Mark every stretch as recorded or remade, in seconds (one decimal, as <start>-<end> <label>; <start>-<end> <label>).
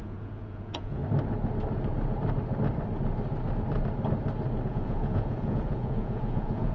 0.0-1.0 remade; 1.0-4.7 recorded; 4.7-6.7 remade